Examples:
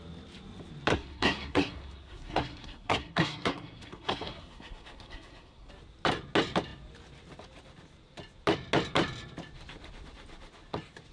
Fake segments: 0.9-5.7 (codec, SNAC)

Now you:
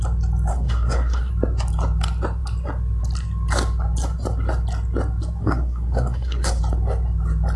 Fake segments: 0.5-1.3 (codec, SNAC); 5.4-6.6

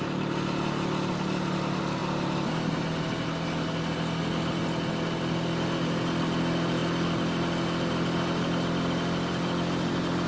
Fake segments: none

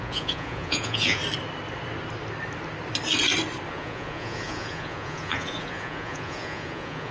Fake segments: 0.0-1.2 (vocoder, Vocos); 3.7-7.1